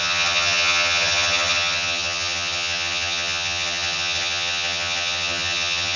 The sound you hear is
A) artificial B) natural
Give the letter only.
A